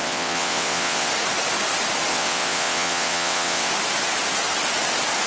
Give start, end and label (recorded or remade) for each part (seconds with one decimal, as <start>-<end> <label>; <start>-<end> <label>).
0.0-1.1 remade; 1.1-2.1 recorded; 2.1-3.7 remade; 3.7-5.3 recorded